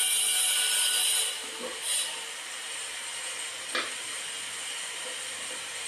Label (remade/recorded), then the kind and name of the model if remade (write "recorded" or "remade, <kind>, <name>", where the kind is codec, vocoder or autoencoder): recorded